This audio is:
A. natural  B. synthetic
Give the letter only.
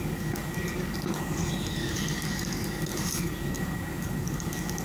B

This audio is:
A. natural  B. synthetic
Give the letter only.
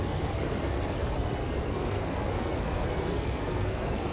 B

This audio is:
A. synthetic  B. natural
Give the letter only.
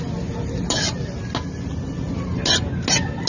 B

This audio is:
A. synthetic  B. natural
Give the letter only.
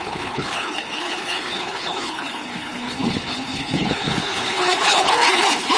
A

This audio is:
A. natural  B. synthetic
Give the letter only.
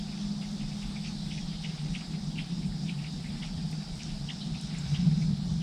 A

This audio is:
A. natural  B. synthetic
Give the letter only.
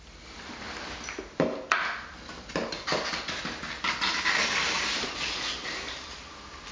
A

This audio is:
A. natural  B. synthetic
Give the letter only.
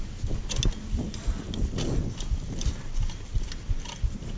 A